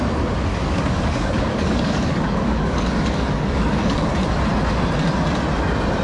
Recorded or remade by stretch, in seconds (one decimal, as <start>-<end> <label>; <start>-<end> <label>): 0.0-0.5 recorded; 0.5-4.1 remade; 4.1-6.0 recorded